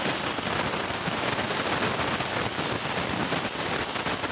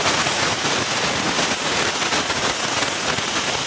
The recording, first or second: first